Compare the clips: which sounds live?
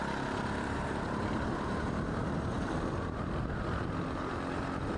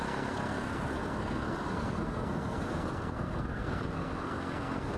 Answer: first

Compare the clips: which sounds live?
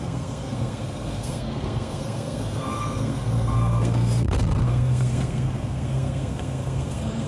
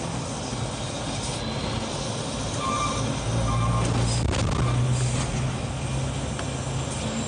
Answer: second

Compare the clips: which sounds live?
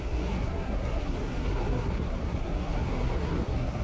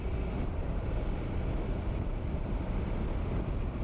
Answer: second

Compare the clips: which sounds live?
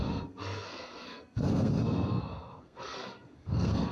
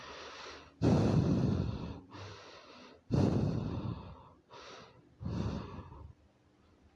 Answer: second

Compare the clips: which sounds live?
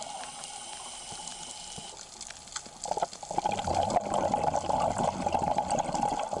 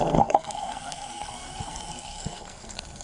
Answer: first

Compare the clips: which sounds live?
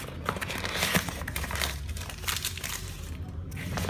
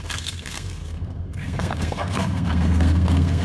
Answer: first